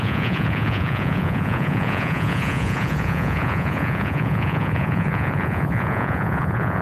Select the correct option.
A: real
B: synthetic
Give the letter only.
B